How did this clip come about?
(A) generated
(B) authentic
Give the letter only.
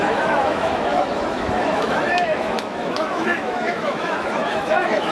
A